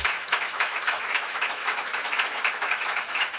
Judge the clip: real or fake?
fake